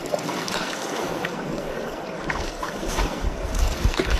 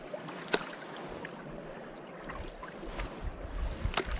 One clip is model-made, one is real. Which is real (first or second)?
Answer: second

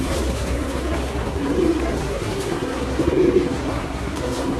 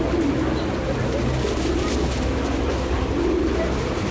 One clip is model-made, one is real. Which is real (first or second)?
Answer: second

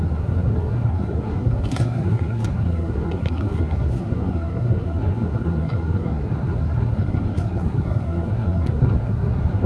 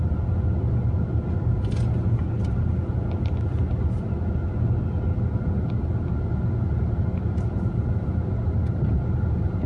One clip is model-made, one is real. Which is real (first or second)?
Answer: second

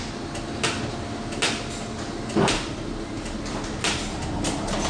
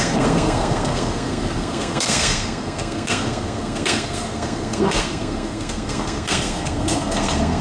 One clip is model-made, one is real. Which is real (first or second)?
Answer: first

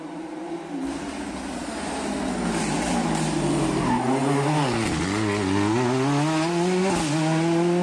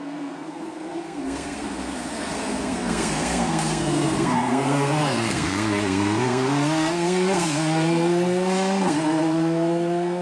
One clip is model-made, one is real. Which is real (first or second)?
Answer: first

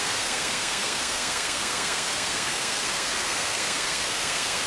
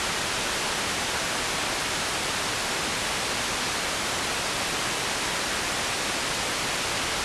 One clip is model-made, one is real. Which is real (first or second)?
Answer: second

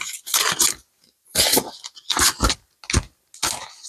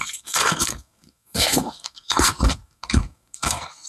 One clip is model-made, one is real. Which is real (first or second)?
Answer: first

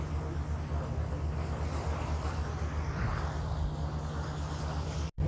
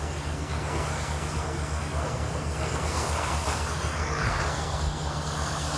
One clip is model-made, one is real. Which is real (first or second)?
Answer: first